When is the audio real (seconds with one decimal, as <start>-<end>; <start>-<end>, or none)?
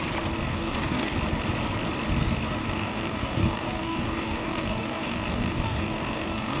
0.0-0.5; 1.1-2.6